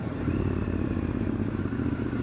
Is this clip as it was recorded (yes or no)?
yes